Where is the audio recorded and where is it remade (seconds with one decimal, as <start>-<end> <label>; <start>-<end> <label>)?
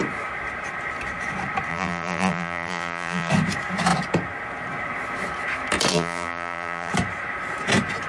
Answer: 0.0-1.7 recorded; 1.7-3.3 remade; 3.3-5.9 recorded; 5.9-6.9 remade; 6.9-8.1 recorded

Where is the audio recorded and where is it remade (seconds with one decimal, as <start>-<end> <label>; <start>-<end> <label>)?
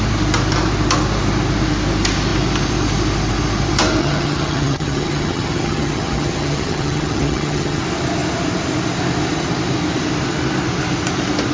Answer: 0.0-4.0 recorded; 4.0-7.8 remade; 7.8-11.5 recorded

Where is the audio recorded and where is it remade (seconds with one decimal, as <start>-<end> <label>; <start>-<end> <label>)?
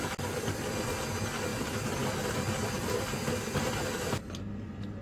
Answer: 0.0-5.0 recorded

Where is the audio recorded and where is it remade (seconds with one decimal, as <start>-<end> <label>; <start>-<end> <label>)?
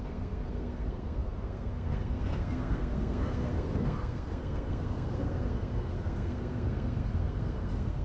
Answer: 0.0-8.0 remade